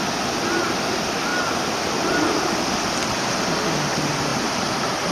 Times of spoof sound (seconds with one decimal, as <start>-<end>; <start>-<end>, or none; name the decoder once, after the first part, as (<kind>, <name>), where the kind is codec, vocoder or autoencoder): 4.3-5.1 (vocoder, BigVGAN v2)